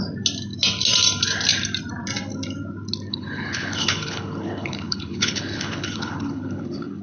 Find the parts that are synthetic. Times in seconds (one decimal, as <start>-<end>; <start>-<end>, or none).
3.1-7.0